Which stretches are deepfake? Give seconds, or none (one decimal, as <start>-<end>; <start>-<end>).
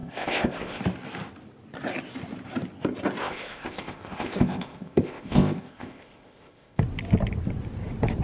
0.0-0.8; 3.2-6.8